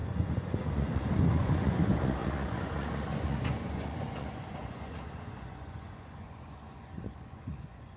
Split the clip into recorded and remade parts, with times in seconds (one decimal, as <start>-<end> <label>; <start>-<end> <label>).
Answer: 0.0-8.0 remade